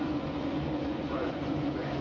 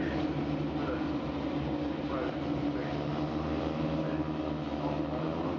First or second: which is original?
second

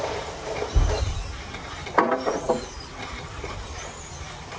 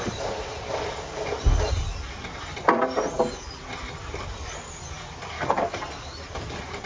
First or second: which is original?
second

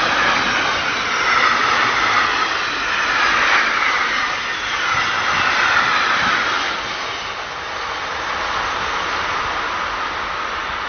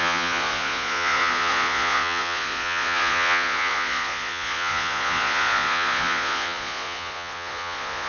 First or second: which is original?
first